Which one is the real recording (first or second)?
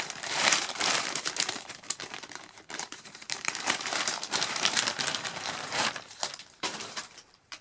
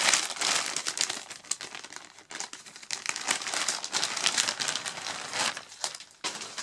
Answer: second